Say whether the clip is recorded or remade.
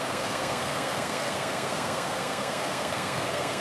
remade